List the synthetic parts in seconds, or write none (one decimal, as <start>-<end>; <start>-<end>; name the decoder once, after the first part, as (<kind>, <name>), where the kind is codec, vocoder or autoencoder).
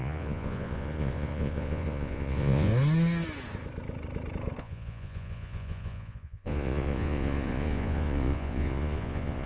0.0-2.7 (vocoder, Vocos); 4.6-9.5